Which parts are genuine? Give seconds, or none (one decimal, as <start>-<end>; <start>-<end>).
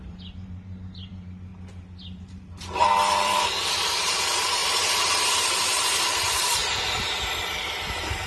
1.5-2.2; 6.6-7.6